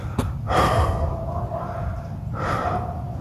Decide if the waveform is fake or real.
real